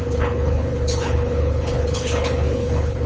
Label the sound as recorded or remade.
remade